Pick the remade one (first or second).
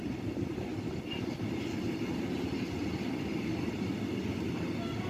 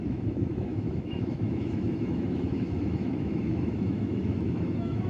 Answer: second